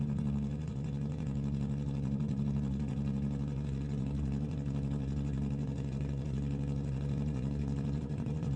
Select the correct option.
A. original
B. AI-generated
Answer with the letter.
B